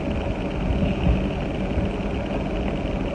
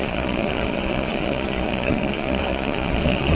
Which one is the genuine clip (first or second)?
first